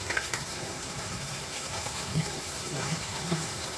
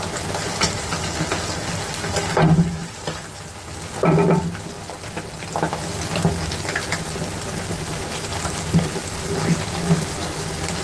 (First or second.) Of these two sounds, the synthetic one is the first